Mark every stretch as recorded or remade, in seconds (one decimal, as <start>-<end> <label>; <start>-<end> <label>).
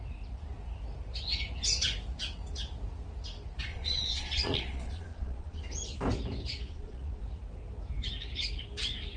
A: 0.0-3.7 recorded; 3.7-5.6 remade; 5.6-6.7 recorded; 6.7-7.2 remade; 7.2-9.2 recorded